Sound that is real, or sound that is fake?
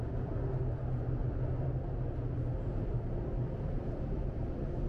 real